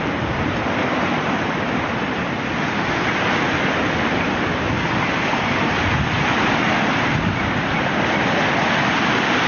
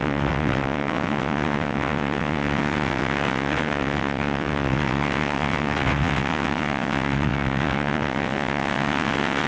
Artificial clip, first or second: second